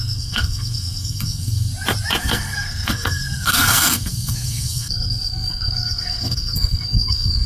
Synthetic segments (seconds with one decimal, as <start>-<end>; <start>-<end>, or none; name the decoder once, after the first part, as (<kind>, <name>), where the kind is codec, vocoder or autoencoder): 0.0-1.7 (codec, SNAC); 2.2-7.5